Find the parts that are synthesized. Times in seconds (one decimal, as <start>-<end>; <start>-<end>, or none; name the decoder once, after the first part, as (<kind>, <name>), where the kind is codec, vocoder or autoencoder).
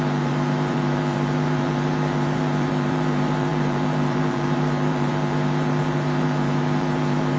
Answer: 0.0-7.4 (vocoder, BigVGAN v2)